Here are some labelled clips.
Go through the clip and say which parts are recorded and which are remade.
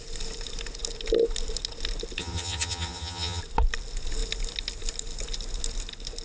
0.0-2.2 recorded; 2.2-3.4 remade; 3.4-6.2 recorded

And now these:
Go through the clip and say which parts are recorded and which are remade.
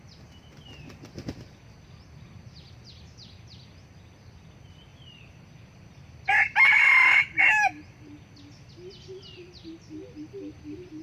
0.0-11.0 recorded